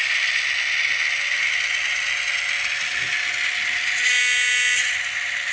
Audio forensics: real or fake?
real